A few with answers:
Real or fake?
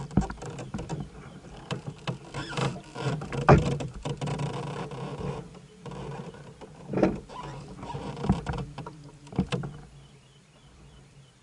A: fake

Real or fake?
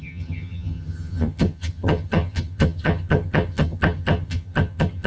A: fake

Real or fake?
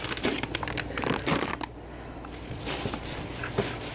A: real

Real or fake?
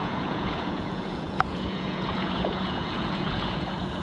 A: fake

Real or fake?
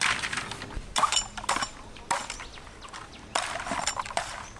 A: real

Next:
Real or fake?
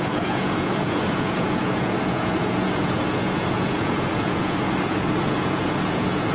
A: fake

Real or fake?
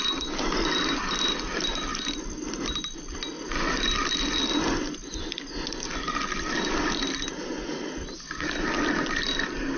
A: real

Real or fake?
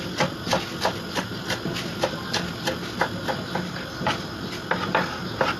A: real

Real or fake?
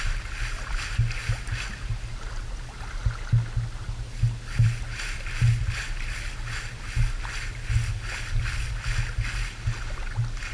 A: real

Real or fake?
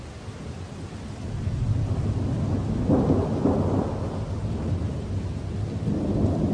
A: real